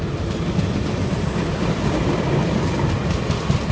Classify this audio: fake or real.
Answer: real